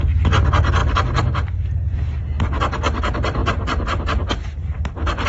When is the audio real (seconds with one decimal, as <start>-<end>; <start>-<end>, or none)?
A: 0.0-5.3